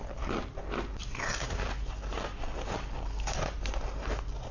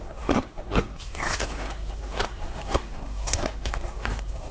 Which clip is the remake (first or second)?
second